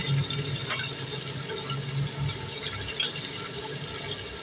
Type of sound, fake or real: real